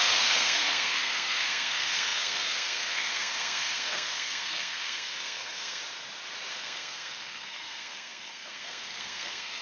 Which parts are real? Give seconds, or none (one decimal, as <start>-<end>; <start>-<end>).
5.8-6.5